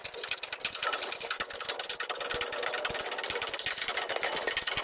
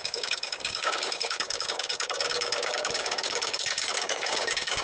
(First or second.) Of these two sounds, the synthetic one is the second